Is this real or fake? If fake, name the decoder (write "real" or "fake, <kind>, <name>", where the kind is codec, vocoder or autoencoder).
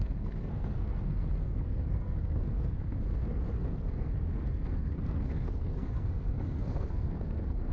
fake, codec, SNAC